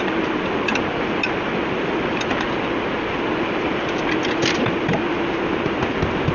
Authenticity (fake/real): real